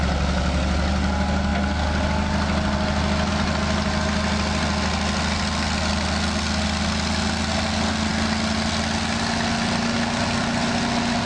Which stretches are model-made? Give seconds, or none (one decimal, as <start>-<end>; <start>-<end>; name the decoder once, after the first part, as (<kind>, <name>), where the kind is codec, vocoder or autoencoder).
none